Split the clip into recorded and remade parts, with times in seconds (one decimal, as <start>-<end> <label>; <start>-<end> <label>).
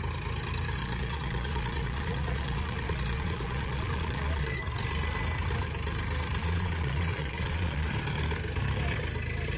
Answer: 0.0-0.8 recorded; 0.8-4.6 remade; 4.6-6.4 recorded; 6.4-7.9 remade; 7.9-9.6 recorded